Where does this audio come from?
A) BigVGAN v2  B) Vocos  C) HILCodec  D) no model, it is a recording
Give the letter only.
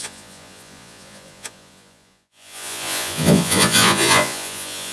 B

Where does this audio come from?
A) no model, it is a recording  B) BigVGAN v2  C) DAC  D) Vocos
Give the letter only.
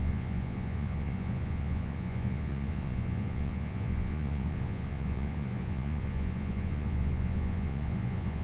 D